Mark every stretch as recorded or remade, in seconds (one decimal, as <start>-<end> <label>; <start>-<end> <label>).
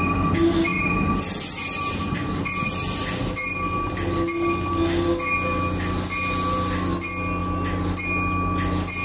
0.0-9.0 recorded